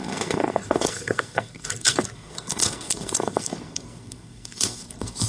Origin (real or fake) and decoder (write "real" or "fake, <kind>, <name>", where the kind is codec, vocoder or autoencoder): fake, codec, SNAC